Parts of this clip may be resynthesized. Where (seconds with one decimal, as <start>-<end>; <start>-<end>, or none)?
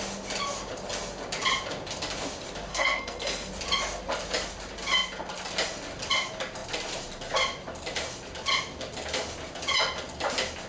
2.7-3.5